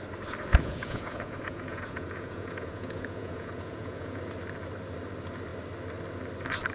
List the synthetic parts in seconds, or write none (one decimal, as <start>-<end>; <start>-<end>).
0.5-4.2